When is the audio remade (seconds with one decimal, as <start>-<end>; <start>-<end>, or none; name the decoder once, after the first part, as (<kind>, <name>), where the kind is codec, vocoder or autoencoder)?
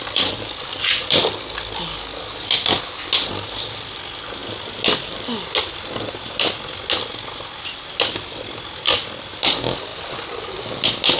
none